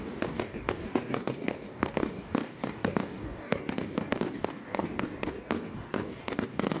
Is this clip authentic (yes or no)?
no